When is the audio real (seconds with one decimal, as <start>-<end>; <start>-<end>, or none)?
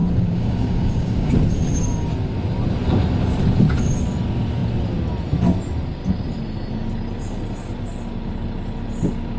1.3-9.4